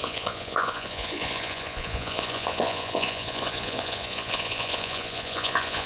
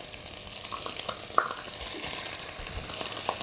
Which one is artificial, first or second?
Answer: first